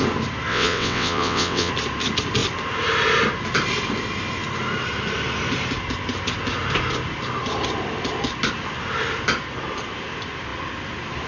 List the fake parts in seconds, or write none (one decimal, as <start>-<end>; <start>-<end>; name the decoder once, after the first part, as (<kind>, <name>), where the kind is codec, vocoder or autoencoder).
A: 0.5-1.7 (vocoder, WaveNeXt)